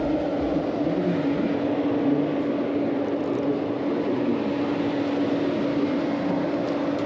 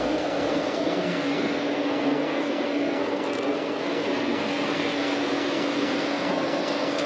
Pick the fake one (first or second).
second